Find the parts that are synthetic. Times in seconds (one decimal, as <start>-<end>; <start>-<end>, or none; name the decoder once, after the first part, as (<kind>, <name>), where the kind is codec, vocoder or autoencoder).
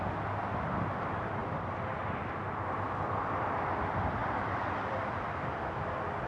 1.4-2.3 (vocoder, BigVGAN v2); 4.2-5.8